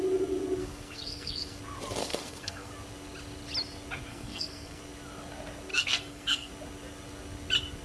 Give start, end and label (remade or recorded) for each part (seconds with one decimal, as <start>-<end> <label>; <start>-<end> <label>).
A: 0.0-0.6 recorded; 0.6-1.6 remade; 1.6-2.0 recorded; 2.0-2.7 remade; 2.7-4.1 recorded; 4.1-4.8 remade; 4.8-5.7 recorded; 5.7-6.5 remade; 6.5-7.8 recorded